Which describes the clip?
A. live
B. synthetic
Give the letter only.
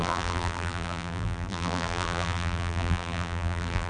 B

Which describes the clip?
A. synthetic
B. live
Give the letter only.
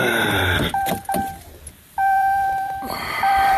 A